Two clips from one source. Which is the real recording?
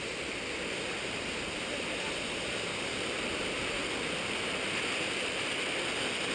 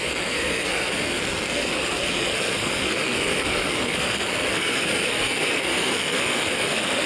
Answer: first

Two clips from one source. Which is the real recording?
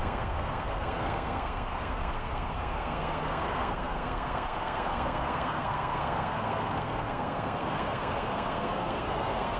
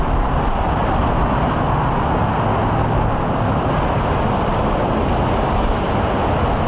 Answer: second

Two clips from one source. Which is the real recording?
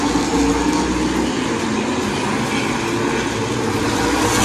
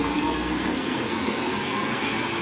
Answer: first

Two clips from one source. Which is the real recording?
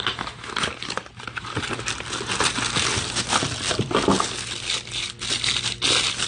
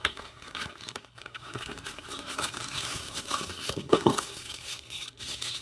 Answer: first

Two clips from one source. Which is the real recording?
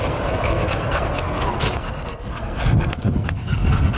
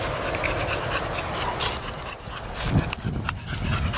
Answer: second